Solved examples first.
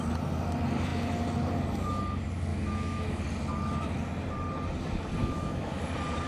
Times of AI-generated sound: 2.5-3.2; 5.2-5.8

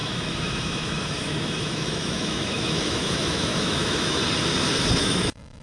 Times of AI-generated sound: 0.0-4.2; 4.9-5.6

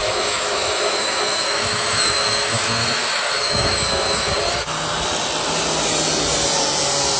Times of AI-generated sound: 0.0-4.3

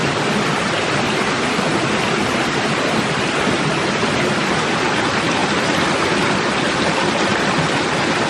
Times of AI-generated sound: none

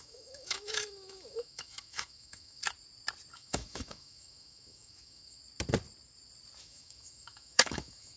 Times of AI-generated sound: 0.0-2.6; 3.3-5.4; 6.6-8.2

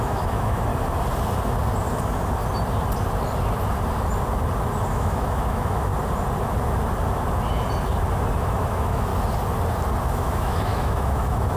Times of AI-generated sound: 0.0-0.7; 4.9-5.9; 8.4-9.1; 10.1-11.6